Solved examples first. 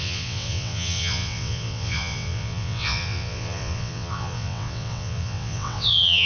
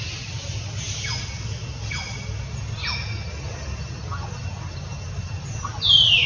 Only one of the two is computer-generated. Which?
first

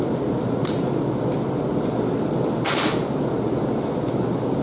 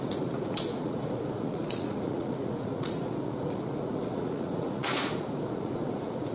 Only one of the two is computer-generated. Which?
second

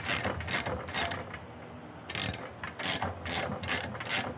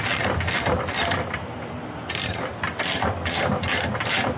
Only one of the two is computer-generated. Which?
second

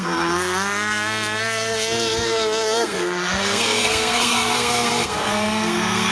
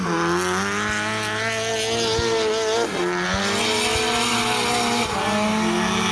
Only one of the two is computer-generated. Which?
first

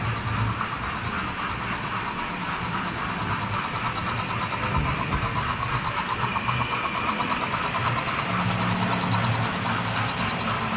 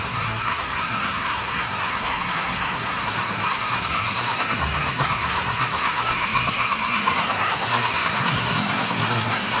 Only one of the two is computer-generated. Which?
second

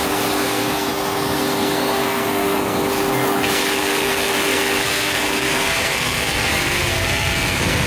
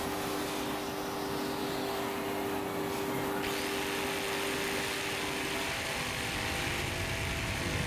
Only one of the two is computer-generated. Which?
first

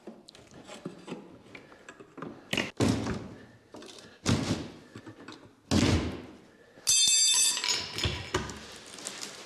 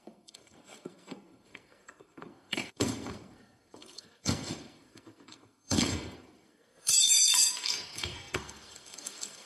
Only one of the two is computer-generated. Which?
second